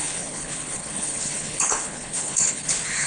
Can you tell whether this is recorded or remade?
remade